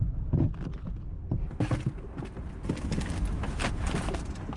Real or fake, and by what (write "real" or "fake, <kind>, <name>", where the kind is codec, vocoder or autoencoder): real